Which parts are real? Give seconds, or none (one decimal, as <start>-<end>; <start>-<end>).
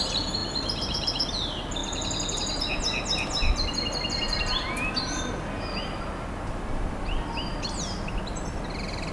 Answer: 0.0-9.1